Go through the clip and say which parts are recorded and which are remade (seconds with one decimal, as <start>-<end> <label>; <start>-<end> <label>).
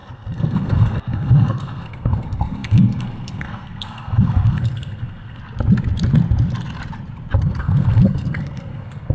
0.0-5.4 remade; 5.4-7.4 recorded; 7.4-9.1 remade